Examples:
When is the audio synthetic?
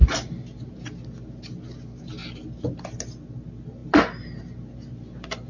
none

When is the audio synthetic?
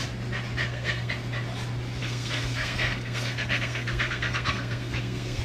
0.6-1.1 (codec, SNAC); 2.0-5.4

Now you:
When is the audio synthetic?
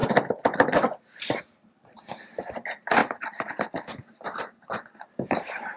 0.0-5.8 (vocoder, BigVGAN v2)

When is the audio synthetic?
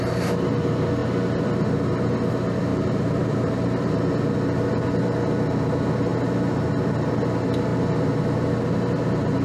2.7-4.0 (vocoder, BigVGAN v2)